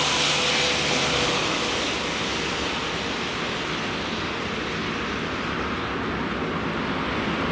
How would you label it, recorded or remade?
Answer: recorded